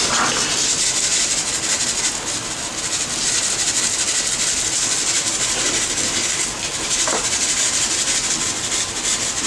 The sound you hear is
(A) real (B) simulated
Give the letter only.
A